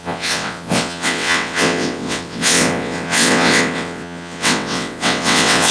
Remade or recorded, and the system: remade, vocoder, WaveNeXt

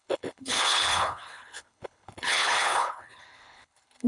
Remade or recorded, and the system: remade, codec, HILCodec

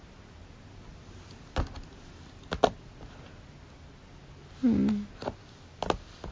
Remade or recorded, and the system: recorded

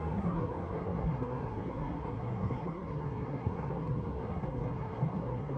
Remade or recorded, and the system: remade, codec, SNAC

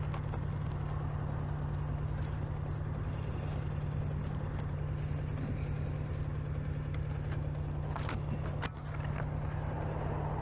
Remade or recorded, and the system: recorded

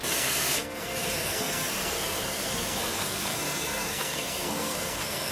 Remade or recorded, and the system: remade, codec, SNAC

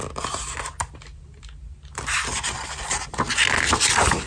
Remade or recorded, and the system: recorded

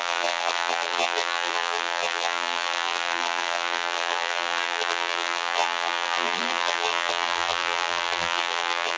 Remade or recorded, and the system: remade, vocoder, BigVGAN v2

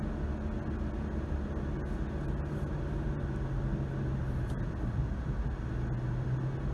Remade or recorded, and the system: recorded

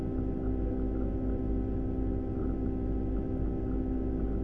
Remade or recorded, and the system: recorded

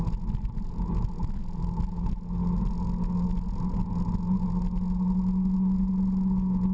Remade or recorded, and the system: recorded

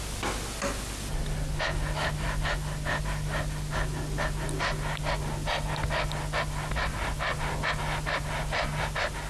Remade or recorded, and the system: recorded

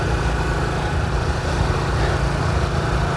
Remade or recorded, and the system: remade, vocoder, BigVGAN v2